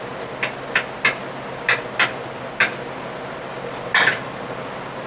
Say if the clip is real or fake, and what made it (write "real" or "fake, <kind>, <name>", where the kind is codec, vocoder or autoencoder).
real